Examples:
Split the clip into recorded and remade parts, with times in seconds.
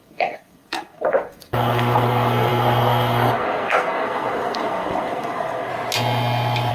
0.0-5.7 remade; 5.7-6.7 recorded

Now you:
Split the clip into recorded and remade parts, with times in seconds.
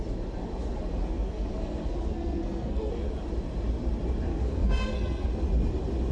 0.0-1.0 recorded; 1.0-2.9 remade; 2.9-4.3 recorded; 4.3-5.3 remade; 5.3-6.1 recorded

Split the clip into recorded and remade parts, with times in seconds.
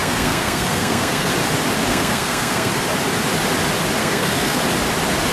0.0-1.3 remade; 1.3-1.9 recorded; 1.9-2.7 remade; 2.7-4.0 recorded; 4.0-4.6 remade; 4.6-5.3 recorded